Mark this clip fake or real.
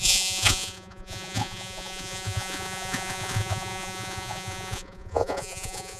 fake